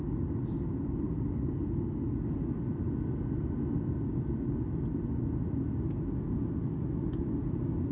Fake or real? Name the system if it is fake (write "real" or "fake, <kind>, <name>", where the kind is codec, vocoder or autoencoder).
real